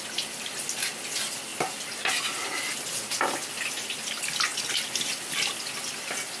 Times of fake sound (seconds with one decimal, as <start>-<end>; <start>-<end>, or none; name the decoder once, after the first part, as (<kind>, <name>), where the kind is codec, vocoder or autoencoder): none